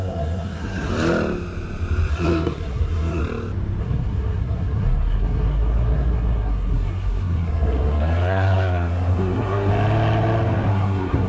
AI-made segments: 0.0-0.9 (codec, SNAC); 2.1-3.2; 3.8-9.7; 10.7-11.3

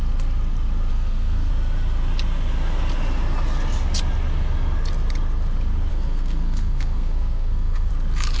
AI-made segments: 0.9-1.5 (codec, SNAC); 5.9-7.9

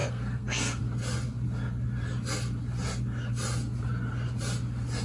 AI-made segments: 0.0-0.8 (codec, SNAC)

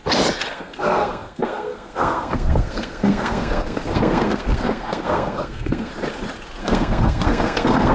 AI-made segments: 0.5-5.9 (codec, SNAC); 6.6-7.9

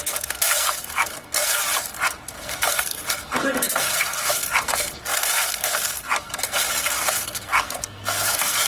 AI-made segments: 0.0-1.6 (codec, SNAC); 2.3-8.7

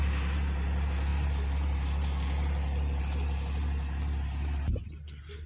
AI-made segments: none

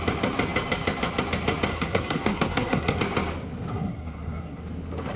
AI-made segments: 1.7-3.0 (codec, SNAC); 3.7-4.6

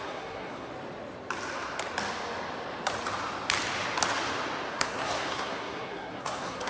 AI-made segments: 0.0-0.7 (codec, SNAC); 4.7-6.7